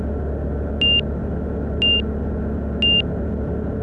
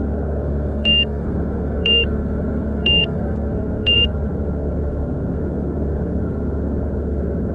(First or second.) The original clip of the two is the first